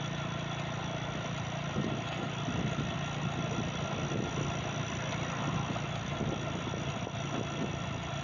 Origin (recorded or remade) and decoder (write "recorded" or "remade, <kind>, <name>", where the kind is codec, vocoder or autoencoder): recorded